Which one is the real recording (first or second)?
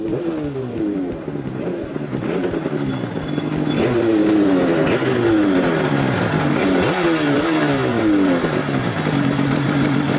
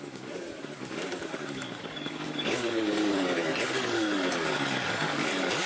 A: first